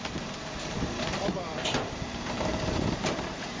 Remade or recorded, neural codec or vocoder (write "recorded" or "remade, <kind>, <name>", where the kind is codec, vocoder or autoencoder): remade, vocoder, BigVGAN v2